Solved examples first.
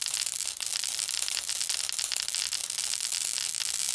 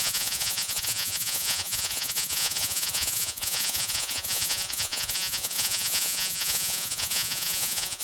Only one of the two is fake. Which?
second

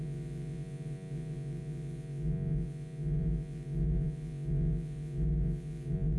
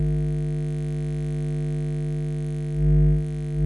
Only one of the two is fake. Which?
first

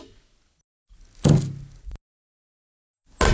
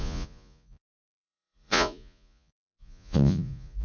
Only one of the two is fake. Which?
second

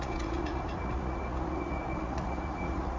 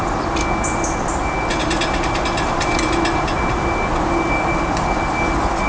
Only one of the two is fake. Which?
first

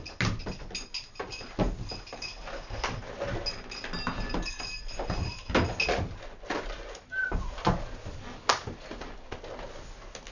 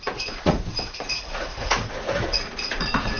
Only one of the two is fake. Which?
second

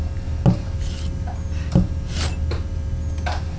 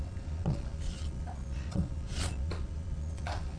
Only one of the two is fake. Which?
second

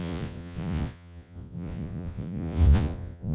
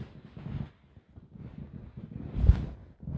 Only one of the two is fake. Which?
first